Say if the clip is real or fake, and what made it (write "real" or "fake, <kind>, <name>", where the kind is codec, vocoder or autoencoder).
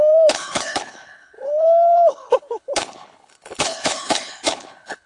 fake, codec, HILCodec